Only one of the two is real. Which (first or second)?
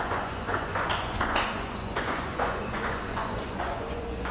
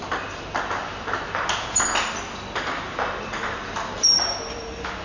second